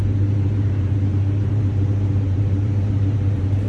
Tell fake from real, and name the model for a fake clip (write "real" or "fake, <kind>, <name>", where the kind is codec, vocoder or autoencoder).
fake, vocoder, BigVGAN v2